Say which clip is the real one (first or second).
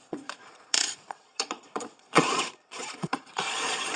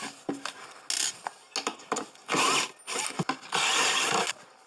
second